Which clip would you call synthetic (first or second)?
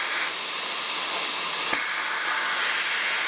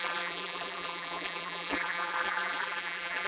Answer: second